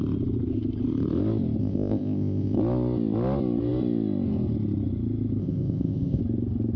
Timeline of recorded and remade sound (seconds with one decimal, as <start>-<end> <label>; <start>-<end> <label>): 0.0-1.6 recorded; 1.6-2.6 remade; 2.6-5.4 recorded; 5.4-6.2 remade; 6.2-6.8 recorded